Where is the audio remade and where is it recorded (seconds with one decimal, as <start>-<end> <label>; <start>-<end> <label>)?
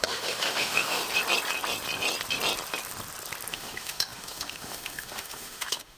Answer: 0.0-1.0 remade; 1.0-3.5 recorded; 3.5-6.0 remade